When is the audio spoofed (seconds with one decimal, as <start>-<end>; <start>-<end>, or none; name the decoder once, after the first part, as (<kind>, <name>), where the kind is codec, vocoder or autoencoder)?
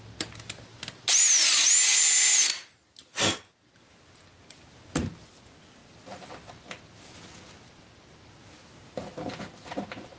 none